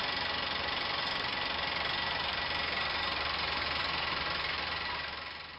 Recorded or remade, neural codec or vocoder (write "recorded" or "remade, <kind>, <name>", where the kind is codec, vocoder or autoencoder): recorded